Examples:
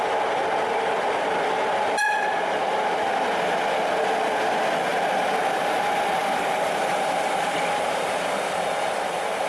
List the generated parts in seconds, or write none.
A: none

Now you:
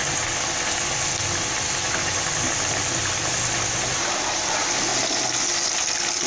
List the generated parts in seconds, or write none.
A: none

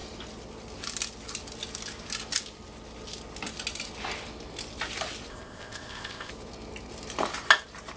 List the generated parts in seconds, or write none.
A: 5.3-6.3

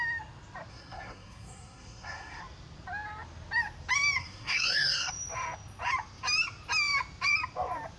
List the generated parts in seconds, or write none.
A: 0.7-2.4; 4.2-5.1